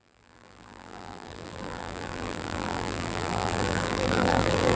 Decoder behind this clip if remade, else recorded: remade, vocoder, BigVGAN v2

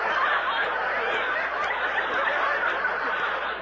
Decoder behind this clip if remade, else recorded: recorded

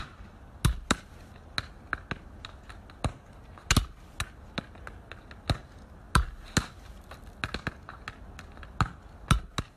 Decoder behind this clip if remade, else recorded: recorded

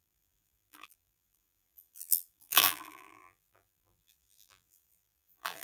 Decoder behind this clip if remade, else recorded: remade, vocoder, BigVGAN v2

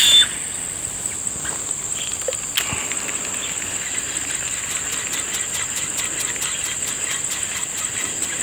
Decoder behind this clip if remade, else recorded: recorded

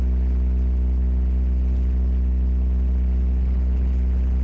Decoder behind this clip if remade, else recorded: recorded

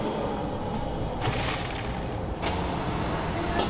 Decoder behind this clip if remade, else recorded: recorded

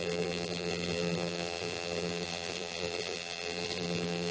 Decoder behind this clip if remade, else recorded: remade, vocoder, BigVGAN v2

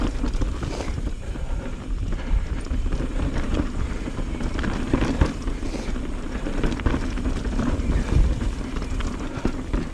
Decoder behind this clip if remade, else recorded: recorded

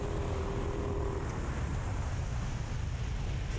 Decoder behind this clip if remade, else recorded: recorded